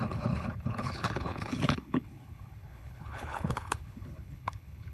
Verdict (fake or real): fake